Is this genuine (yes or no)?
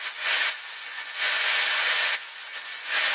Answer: no